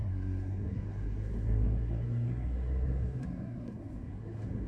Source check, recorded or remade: remade